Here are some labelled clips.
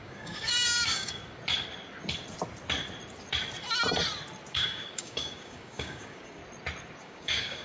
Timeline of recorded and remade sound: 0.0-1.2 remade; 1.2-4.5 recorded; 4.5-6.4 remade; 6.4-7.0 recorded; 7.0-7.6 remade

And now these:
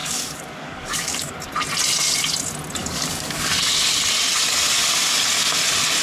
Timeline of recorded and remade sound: 0.0-1.5 remade; 1.5-2.8 recorded; 2.8-3.5 remade; 3.5-6.0 recorded

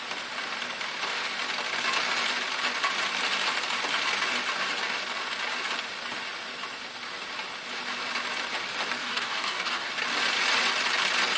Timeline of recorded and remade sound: 0.0-9.0 recorded; 9.0-9.9 remade; 9.9-11.4 recorded

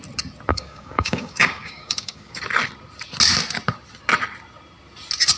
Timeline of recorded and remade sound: 0.0-0.5 recorded; 0.5-2.4 remade; 2.4-5.4 recorded

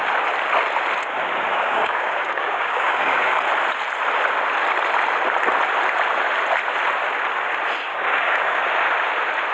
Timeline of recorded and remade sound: 0.0-1.5 recorded; 1.5-3.4 remade; 3.4-7.9 recorded; 7.9-8.6 remade; 8.6-9.5 recorded

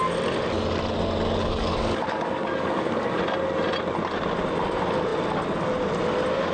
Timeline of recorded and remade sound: 0.0-1.4 recorded; 1.4-3.2 remade; 3.2-6.5 recorded